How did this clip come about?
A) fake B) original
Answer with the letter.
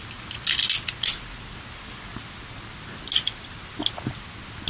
B